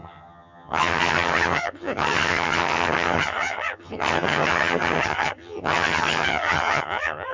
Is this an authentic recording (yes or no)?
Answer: no